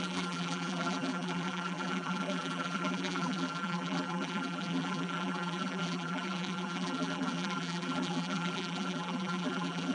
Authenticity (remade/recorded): remade